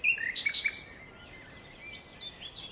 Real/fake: real